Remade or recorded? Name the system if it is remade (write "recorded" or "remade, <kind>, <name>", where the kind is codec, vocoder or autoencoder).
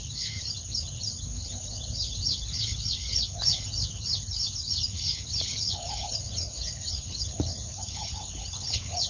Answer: remade, codec, HILCodec